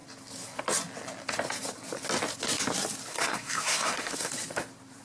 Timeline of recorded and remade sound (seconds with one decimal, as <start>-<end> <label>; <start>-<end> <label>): 0.0-3.1 recorded; 3.1-4.3 remade; 4.3-5.0 recorded